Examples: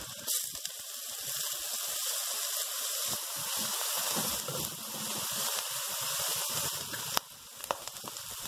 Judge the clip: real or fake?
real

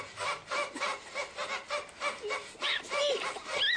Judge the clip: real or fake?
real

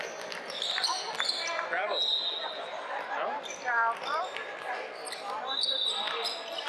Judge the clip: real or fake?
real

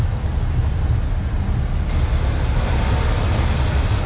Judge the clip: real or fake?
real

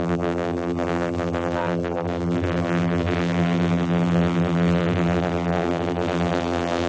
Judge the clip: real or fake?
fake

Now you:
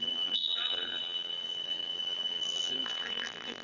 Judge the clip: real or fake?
fake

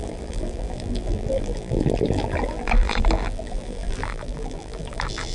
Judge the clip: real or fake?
fake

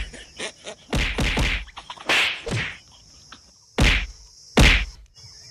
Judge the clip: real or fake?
real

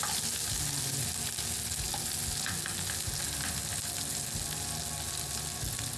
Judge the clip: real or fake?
real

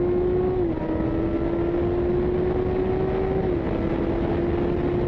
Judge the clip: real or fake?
real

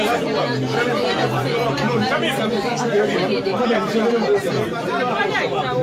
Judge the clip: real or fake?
real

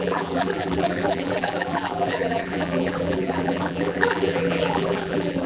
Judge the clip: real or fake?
fake